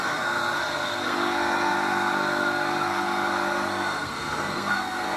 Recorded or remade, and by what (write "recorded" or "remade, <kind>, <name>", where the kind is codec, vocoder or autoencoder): remade, codec, SNAC